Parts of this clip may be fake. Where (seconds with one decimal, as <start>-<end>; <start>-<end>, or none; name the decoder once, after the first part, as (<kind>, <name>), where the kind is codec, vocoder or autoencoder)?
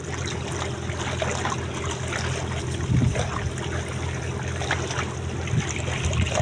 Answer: none